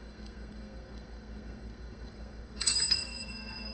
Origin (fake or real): fake